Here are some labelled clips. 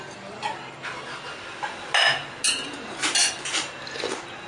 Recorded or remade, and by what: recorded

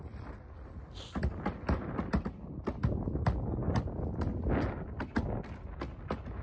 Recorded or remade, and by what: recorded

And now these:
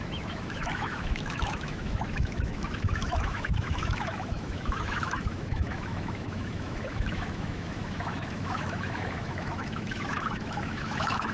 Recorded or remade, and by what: remade, autoencoder, DAC-VAE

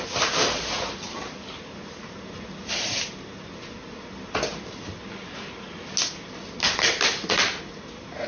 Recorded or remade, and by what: recorded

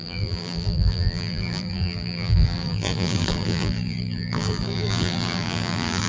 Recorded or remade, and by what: remade, vocoder, BigVGAN v2